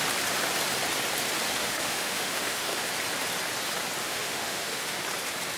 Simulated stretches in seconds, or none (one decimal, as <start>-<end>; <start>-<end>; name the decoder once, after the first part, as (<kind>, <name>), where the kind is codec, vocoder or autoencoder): 1.6-2.9 (autoencoder, DAC-VAE); 4.0-5.0